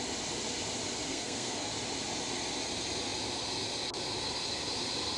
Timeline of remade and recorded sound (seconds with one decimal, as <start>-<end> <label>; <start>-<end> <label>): 0.0-1.1 recorded; 1.1-1.7 remade; 1.7-5.2 recorded